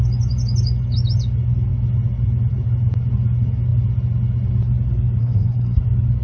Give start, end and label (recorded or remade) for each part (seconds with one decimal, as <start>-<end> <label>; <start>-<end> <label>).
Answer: 0.0-5.2 recorded; 5.2-5.8 remade; 5.8-6.2 recorded